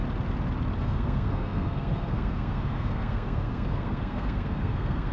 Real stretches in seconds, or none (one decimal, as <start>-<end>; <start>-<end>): 0.0-0.8